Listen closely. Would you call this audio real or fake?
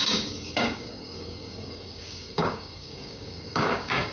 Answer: fake